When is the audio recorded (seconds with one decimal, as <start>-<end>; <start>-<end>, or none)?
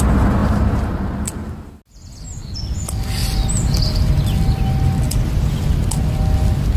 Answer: 0.0-0.4; 0.9-6.8